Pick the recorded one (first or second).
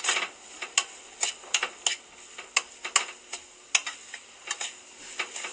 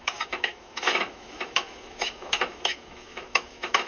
first